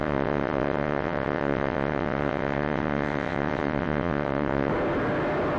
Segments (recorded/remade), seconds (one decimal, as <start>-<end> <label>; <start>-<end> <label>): 0.0-4.7 remade; 4.7-5.6 recorded